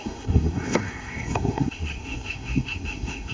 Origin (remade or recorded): remade